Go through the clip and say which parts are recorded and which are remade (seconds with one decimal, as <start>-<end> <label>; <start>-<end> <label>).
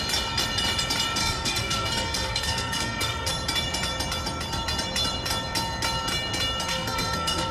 0.0-1.2 recorded; 1.2-3.3 remade; 3.3-6.7 recorded; 6.7-7.5 remade